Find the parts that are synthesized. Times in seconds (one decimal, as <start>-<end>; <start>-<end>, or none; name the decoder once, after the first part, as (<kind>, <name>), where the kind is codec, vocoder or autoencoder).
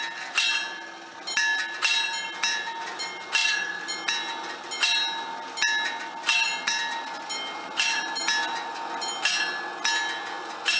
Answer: none